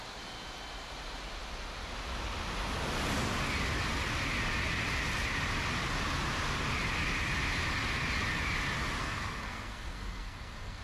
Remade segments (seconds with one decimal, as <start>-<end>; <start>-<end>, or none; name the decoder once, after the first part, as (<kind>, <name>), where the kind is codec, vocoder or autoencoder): 9.0-10.8 (codec, SNAC)